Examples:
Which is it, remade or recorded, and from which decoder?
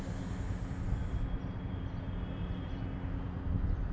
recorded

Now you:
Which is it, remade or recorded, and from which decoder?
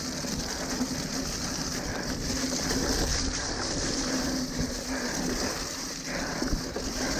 recorded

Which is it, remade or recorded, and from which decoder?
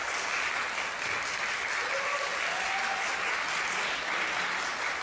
recorded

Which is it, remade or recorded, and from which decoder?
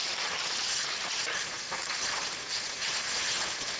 recorded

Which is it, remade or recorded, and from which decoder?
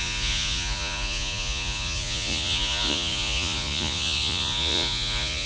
remade, vocoder, Vocos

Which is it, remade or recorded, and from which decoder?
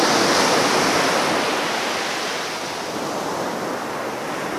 recorded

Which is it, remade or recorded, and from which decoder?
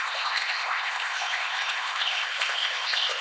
remade, codec, ZipCodec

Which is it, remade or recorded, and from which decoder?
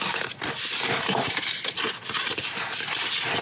recorded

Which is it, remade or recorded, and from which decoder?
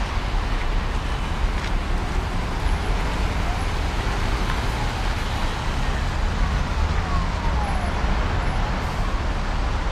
recorded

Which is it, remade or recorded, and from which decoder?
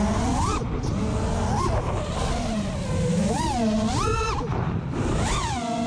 recorded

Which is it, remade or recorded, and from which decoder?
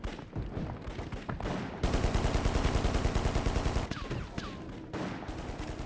recorded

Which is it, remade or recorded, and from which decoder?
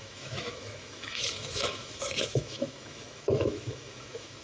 remade, autoencoder, DAC-VAE